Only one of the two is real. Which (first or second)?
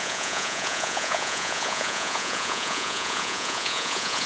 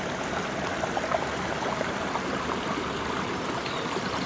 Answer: second